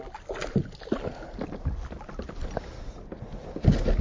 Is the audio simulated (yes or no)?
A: no